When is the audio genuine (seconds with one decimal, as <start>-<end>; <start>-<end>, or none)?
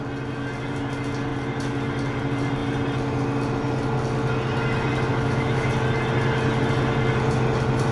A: 0.0-5.1; 5.7-7.9